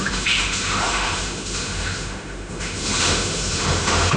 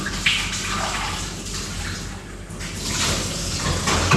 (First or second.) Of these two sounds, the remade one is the first